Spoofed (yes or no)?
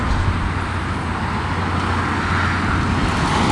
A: no